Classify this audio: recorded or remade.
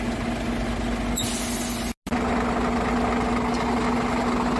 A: recorded